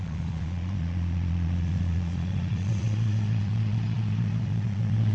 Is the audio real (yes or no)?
no